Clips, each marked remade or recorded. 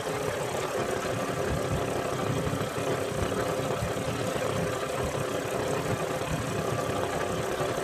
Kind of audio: recorded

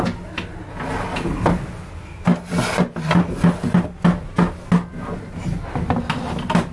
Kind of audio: recorded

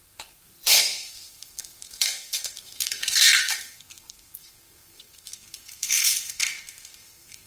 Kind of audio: remade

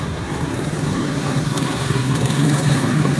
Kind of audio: remade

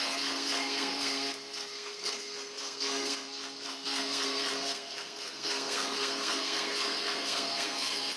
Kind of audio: remade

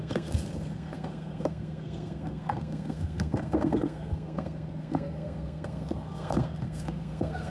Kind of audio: remade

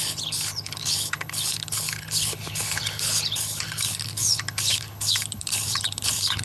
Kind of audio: remade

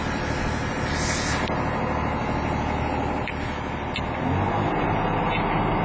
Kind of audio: recorded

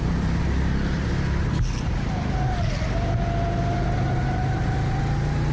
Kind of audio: recorded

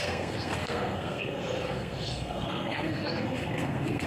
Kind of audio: remade